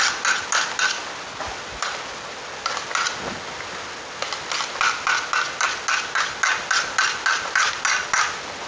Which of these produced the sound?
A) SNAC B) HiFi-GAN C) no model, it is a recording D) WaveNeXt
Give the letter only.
C